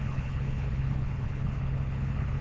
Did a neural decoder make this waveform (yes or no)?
yes